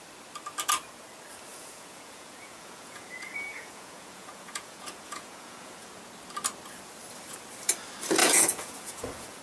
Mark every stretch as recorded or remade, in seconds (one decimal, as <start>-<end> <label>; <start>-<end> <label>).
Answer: 0.0-1.5 recorded; 1.5-5.9 remade; 5.9-8.2 recorded; 8.2-9.4 remade